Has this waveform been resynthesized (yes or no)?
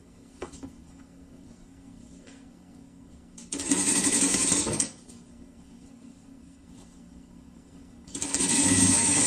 yes